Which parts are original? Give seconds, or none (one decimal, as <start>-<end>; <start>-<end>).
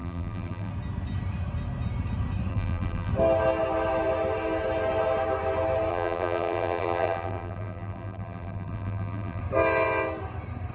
0.7-2.5; 3.1-5.9; 9.4-10.7